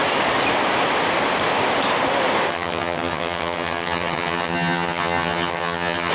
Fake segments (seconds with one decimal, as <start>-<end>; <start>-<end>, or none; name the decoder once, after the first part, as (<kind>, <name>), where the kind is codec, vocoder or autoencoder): 2.5-6.1 (vocoder, HiFi-GAN)